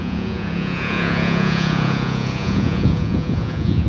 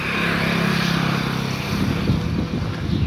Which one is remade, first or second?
first